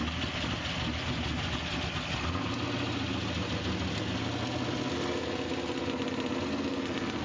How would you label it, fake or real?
real